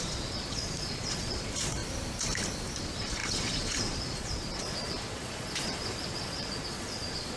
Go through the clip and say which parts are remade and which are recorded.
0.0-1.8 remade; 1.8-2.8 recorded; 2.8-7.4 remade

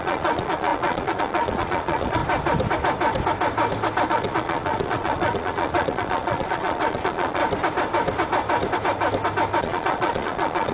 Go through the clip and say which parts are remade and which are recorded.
0.0-2.2 remade; 2.2-4.1 recorded; 4.1-7.4 remade; 7.4-9.6 recorded; 9.6-10.7 remade

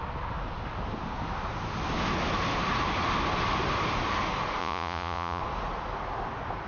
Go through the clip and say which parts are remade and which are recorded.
0.0-4.6 recorded; 4.6-5.4 remade; 5.4-6.7 recorded

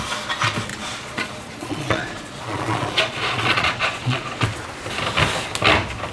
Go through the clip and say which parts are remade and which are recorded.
0.0-0.7 recorded; 0.7-4.4 remade; 4.4-6.1 recorded